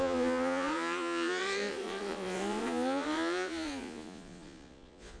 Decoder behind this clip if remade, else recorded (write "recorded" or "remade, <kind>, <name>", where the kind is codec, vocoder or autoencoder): remade, vocoder, Vocos